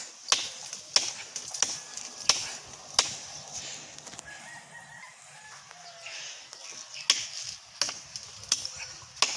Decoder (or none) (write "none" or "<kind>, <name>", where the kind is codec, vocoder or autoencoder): none